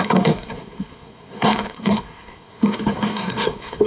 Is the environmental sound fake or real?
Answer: fake